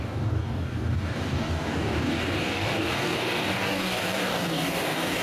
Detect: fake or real fake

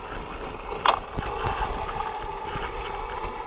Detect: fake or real real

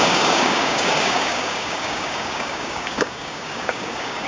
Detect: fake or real fake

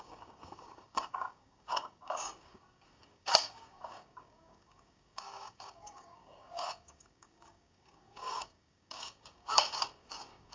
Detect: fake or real fake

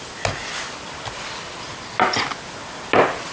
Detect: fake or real real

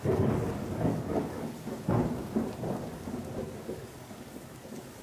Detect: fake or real fake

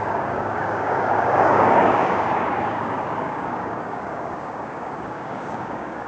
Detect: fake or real fake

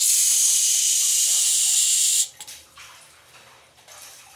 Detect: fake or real real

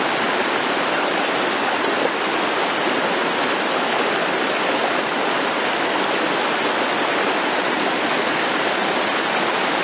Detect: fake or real real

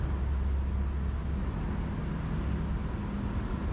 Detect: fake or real real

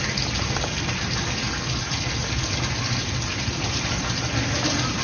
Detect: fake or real real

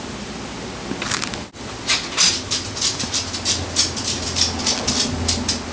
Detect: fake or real real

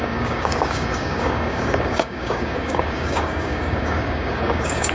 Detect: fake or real fake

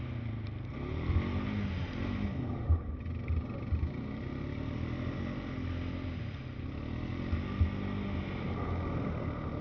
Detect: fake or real real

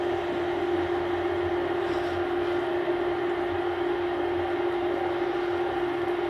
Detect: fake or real real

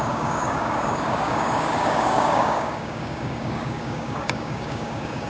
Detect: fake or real fake